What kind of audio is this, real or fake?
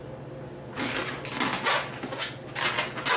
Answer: real